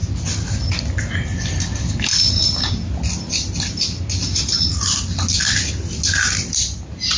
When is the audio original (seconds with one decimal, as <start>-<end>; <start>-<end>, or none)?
0.0-7.2